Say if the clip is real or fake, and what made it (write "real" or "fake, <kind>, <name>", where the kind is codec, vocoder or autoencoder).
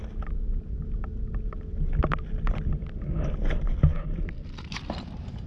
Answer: real